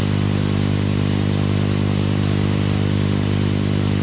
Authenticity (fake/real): real